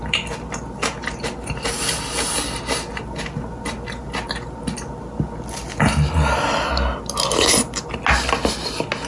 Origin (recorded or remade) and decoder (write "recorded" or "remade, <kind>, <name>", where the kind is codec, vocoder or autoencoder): recorded